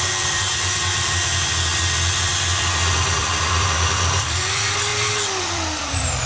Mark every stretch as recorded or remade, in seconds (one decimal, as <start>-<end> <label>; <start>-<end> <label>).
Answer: 0.0-4.9 remade; 4.9-5.4 recorded; 5.4-6.3 remade